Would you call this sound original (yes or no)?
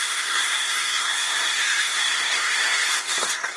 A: no